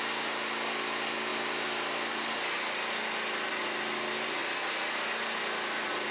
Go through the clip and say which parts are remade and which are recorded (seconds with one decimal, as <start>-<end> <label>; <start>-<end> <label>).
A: 0.0-6.1 recorded